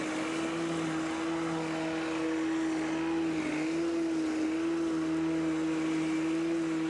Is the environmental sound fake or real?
real